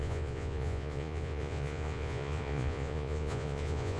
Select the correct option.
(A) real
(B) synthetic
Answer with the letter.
B